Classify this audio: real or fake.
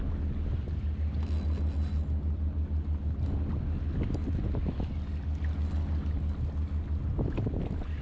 real